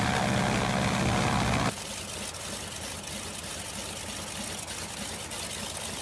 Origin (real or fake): real